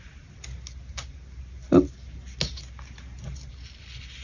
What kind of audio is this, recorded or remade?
recorded